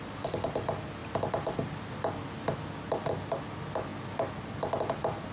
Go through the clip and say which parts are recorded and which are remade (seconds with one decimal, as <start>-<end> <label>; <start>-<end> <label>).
0.0-5.3 recorded